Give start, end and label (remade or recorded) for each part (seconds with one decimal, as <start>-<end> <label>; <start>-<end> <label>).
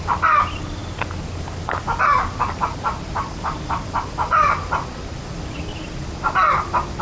0.0-7.0 recorded